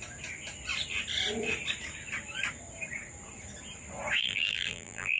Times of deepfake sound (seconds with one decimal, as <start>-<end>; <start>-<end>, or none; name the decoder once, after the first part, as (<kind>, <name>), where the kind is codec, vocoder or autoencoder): 4.2-5.2 (vocoder, BigVGAN v2)